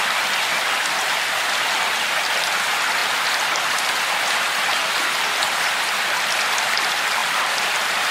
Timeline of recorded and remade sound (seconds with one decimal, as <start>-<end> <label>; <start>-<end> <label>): 0.0-3.0 remade; 3.0-6.2 recorded; 6.2-8.1 remade